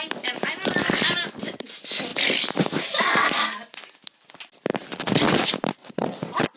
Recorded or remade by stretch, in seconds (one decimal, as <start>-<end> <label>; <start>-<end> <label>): 0.0-5.8 recorded; 5.8-6.6 remade

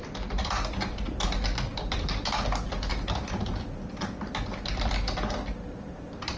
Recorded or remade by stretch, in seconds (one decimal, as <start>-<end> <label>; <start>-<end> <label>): 0.0-6.4 recorded

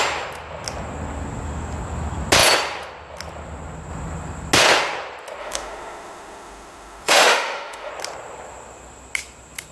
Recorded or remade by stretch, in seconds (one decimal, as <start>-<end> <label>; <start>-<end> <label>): 0.0-5.4 recorded; 5.4-7.9 remade; 7.9-9.7 recorded

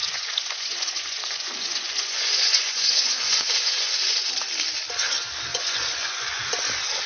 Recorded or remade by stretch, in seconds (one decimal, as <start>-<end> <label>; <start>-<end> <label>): 0.0-4.3 remade; 4.3-5.5 recorded; 5.5-6.4 remade; 6.4-7.1 recorded

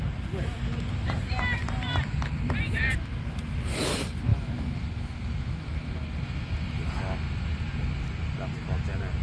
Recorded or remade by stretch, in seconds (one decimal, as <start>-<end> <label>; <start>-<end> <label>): 0.0-4.3 recorded; 4.3-5.9 remade; 5.9-9.2 recorded

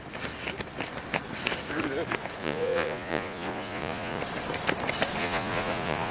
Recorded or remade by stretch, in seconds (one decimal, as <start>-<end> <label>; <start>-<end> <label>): 0.0-2.4 recorded; 2.4-4.2 remade; 4.2-5.2 recorded; 5.2-6.1 remade

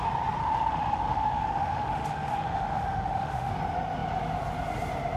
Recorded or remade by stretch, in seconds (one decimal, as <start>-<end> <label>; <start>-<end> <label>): 0.0-0.4 recorded; 0.4-3.5 remade; 3.5-5.2 recorded

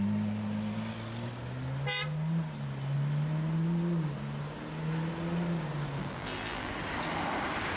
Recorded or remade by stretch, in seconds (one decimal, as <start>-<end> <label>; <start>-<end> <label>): 0.0-6.0 recorded; 6.0-6.7 remade; 6.7-7.8 recorded